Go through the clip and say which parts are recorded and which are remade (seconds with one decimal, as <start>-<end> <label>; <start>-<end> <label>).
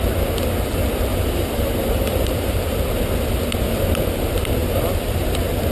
0.0-1.1 recorded; 1.1-2.7 remade; 2.7-5.7 recorded